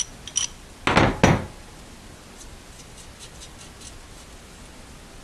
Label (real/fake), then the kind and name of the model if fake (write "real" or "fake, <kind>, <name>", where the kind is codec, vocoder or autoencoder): real